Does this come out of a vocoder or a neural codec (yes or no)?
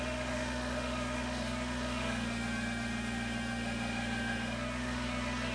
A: yes